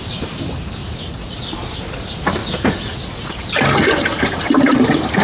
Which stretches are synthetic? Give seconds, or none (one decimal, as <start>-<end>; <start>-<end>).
0.8-1.3; 2.4-3.4